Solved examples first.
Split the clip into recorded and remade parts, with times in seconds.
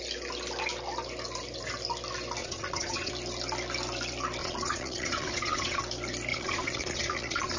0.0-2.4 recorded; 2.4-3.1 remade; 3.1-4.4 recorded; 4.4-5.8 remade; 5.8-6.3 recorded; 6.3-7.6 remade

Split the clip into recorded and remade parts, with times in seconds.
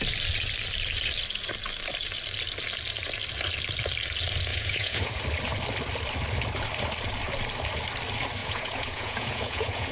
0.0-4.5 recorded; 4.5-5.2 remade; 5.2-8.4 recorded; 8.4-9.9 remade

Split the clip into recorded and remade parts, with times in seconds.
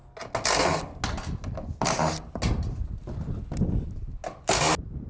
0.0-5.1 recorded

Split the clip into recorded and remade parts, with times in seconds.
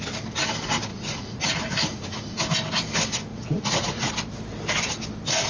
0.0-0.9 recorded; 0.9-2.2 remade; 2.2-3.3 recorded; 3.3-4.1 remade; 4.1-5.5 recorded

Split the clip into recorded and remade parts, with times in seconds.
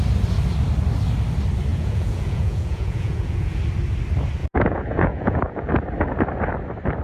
0.0-1.7 recorded; 1.7-3.6 remade; 3.6-4.4 recorded; 4.4-5.7 remade; 5.7-7.0 recorded